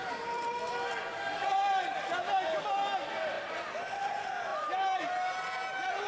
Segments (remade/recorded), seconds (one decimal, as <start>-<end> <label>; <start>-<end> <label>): 0.0-0.7 remade; 0.7-4.5 recorded; 4.5-5.0 remade; 5.0-6.1 recorded